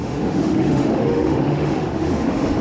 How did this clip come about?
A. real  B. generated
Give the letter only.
B